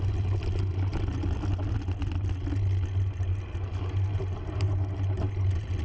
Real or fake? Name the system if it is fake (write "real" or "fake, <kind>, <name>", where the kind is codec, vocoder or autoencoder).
real